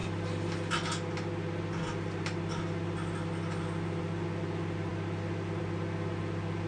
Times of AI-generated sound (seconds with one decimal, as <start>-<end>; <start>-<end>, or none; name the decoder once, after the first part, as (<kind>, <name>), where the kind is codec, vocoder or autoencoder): none